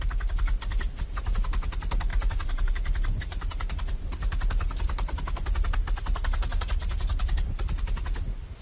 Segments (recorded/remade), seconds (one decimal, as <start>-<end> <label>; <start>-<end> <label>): 0.0-2.1 recorded; 2.1-2.7 remade; 2.7-8.6 recorded